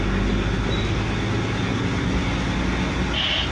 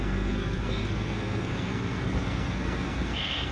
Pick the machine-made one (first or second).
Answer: second